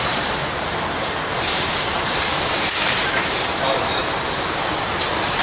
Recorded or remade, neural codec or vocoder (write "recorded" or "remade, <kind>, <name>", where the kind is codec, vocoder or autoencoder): remade, vocoder, BigVGAN v2